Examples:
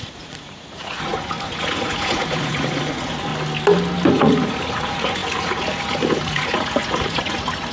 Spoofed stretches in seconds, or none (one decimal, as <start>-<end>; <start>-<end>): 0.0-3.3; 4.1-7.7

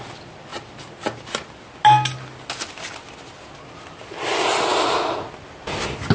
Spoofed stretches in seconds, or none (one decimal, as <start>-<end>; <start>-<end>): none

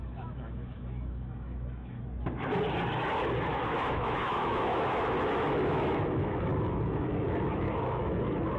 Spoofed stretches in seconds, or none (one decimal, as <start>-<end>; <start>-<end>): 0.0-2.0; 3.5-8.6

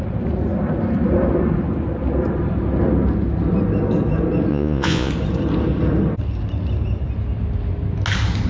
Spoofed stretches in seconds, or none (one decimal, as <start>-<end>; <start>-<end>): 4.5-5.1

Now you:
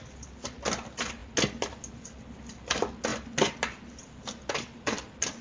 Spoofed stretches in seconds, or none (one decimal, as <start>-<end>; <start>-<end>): none

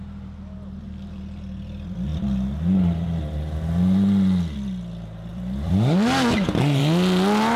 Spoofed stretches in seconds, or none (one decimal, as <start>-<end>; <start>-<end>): 5.3-6.8

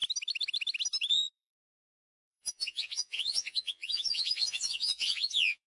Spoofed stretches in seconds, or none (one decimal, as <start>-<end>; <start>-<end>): 1.1-5.7